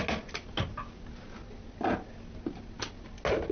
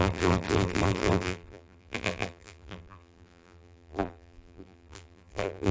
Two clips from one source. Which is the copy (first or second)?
second